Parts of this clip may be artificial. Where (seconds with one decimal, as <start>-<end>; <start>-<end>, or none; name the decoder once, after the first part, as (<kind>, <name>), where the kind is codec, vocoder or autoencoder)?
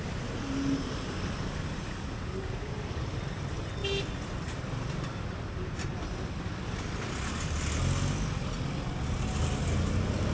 none